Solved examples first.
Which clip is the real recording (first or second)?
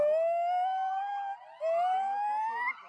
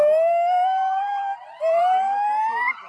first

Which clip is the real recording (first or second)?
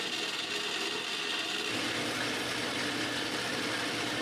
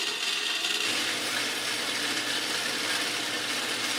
second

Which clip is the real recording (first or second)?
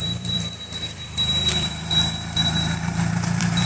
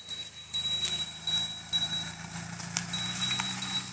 second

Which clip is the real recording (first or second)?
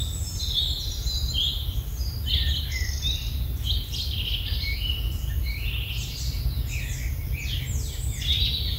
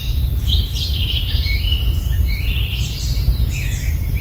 first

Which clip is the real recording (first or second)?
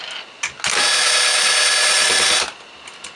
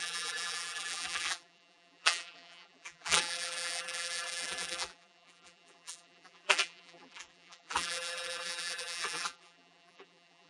first